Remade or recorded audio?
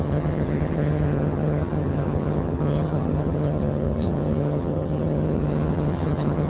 remade